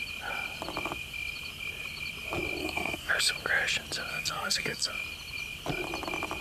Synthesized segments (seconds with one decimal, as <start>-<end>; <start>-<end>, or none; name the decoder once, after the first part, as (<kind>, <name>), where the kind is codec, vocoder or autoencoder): 2.6-3.1 (codec, SNAC); 4.1-4.9